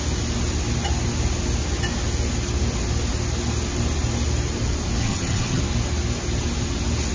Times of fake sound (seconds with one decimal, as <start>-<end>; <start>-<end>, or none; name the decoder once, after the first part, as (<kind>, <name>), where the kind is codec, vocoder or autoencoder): 5.0-5.6 (vocoder, HiFi-GAN)